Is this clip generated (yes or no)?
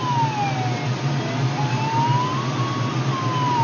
no